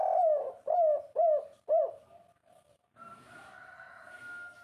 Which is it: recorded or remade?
recorded